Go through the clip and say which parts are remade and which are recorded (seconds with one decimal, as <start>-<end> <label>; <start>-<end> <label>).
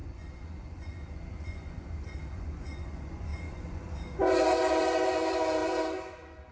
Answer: 0.0-6.5 remade